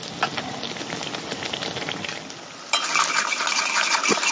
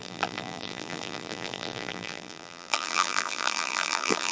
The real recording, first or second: first